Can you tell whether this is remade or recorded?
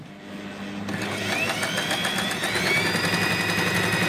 recorded